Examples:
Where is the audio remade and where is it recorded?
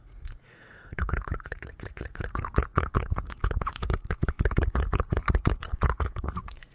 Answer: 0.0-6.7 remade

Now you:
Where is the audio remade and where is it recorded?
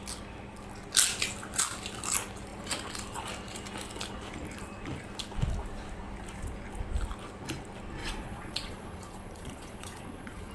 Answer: 0.0-8.0 recorded; 8.0-10.5 remade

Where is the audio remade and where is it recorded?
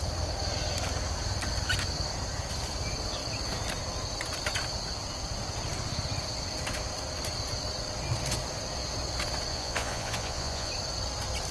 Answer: 0.0-9.5 recorded; 9.5-10.7 remade; 10.7-11.5 recorded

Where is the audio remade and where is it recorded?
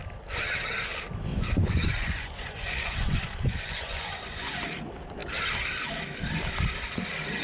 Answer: 0.0-1.3 recorded; 1.3-4.6 remade; 4.6-7.4 recorded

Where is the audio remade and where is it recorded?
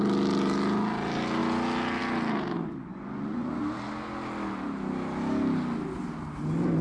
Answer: 0.0-2.9 recorded; 2.9-3.6 remade; 3.6-6.8 recorded